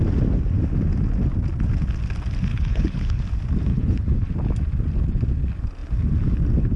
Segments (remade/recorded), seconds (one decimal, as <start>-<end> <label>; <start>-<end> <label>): 0.0-2.5 recorded; 2.5-3.2 remade; 3.2-3.7 recorded; 3.7-4.3 remade; 4.3-6.8 recorded